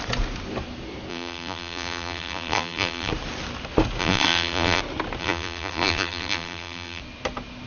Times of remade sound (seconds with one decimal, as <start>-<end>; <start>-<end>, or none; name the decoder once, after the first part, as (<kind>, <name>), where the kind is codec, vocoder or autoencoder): 1.1-3.1 (vocoder, BigVGAN v2); 4.0-4.8; 5.2-7.0